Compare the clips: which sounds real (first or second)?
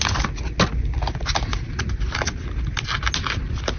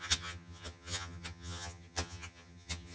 first